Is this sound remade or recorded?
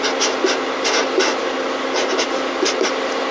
recorded